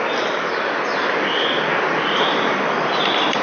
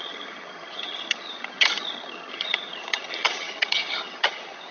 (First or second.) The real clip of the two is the first